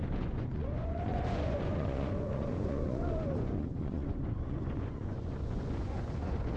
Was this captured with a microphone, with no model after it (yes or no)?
no